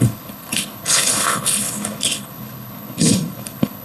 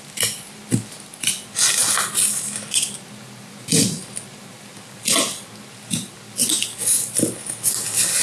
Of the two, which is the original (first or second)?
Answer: second